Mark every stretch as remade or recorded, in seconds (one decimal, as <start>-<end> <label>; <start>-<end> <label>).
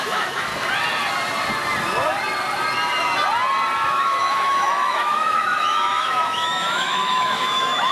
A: 0.0-0.5 remade; 0.5-3.9 recorded; 3.9-7.9 remade